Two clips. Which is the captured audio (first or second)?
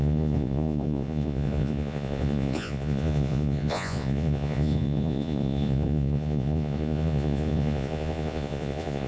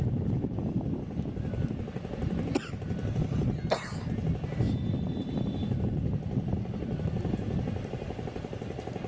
second